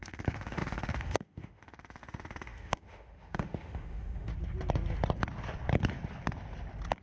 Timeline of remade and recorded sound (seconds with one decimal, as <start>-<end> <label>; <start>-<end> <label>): 0.0-4.3 remade; 4.3-7.0 recorded